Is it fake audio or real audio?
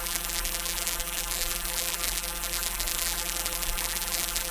fake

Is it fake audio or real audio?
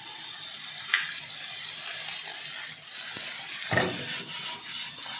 real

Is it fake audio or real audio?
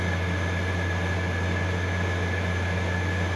real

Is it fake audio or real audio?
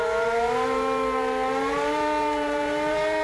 fake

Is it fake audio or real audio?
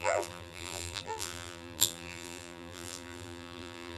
fake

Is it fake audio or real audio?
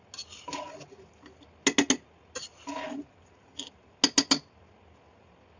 real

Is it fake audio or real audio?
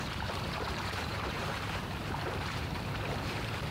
fake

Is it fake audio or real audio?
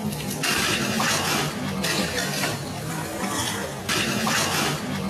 real